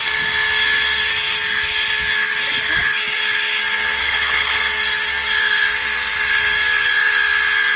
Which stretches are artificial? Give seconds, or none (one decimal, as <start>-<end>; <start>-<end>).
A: 4.0-4.6